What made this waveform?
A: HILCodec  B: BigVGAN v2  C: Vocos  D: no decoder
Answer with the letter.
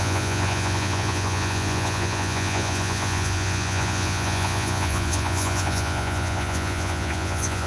C